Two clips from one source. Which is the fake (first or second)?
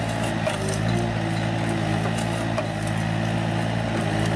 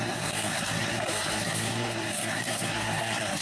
second